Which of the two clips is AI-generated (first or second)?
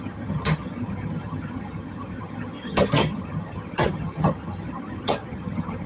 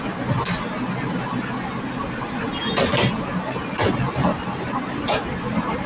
first